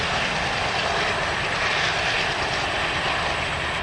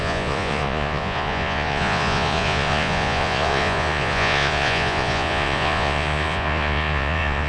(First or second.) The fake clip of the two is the second